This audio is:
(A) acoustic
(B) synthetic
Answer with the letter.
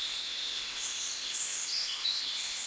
B